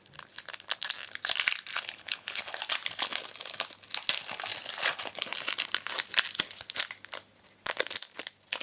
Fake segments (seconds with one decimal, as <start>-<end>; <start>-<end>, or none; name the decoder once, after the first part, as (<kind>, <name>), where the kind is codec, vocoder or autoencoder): 1.7-2.4 (codec, HILCodec)